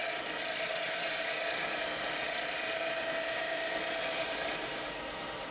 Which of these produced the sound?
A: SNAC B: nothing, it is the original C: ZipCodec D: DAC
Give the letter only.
B